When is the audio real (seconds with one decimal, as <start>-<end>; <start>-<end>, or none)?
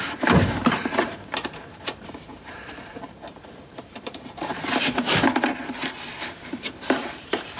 4.5-6.2